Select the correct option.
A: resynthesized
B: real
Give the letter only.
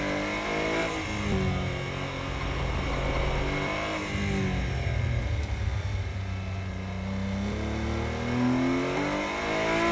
B